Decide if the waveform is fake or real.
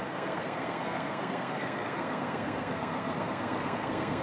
fake